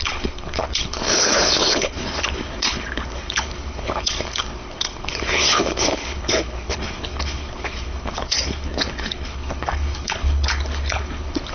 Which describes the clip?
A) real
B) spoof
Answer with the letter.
B